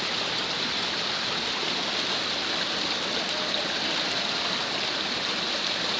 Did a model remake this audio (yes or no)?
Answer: no